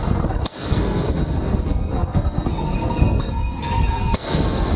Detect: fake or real fake